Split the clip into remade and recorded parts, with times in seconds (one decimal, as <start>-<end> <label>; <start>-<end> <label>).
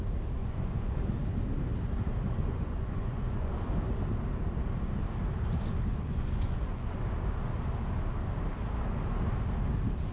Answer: 0.0-0.4 recorded; 0.4-1.0 remade; 1.0-2.4 recorded; 2.4-3.5 remade; 3.5-5.9 recorded; 5.9-7.0 remade; 7.0-10.1 recorded